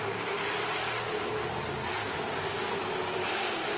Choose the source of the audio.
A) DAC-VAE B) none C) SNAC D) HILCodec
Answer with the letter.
B